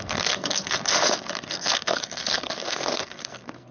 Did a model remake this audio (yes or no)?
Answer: yes